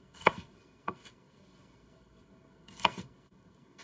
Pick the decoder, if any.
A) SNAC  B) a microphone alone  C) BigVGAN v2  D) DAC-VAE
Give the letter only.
A